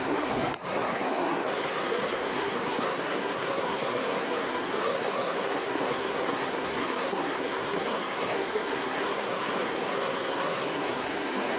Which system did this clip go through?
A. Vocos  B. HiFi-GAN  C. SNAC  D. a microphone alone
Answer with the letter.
C